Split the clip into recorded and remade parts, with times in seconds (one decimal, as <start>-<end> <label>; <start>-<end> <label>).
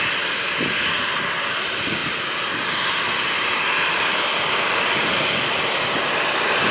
0.0-6.7 recorded